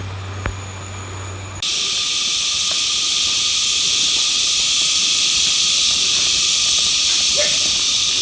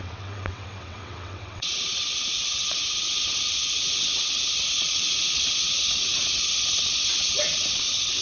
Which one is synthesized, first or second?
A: second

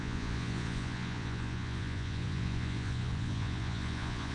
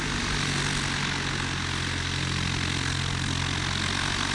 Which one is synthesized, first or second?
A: first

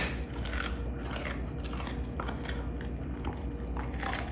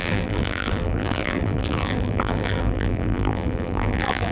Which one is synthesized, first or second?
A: second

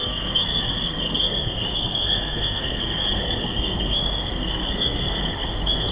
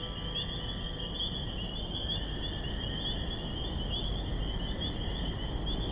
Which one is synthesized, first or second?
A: first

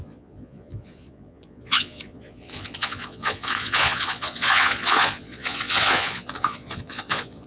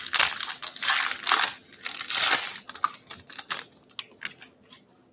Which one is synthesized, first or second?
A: first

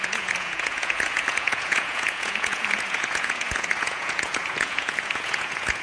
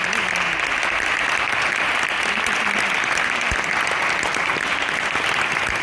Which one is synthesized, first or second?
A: first